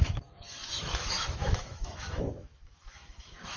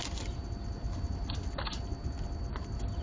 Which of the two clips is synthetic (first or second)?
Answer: first